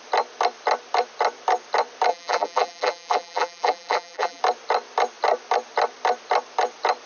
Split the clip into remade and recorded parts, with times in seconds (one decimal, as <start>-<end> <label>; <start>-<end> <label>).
0.0-2.1 recorded; 2.1-4.4 remade; 4.4-7.1 recorded